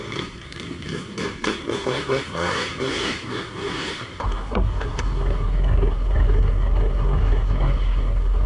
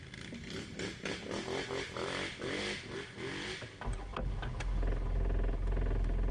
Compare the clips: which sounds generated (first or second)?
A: first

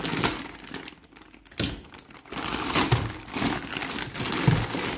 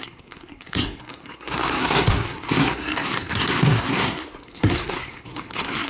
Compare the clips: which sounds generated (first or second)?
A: second